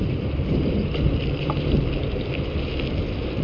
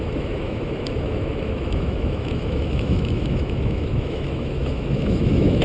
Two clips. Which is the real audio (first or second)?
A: first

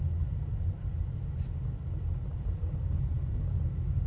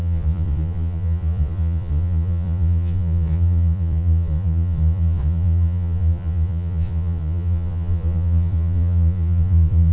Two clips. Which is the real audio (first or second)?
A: first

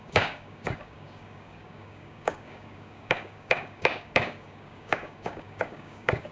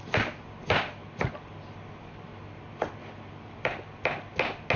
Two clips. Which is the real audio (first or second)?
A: second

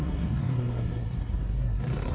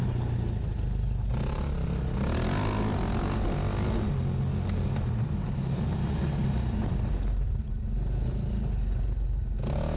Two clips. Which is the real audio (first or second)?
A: second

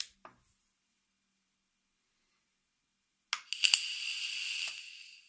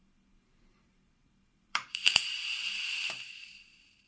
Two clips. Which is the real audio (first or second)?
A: first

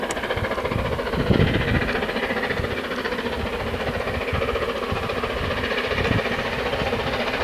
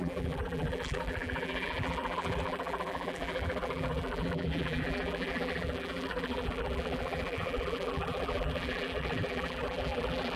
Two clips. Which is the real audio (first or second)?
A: first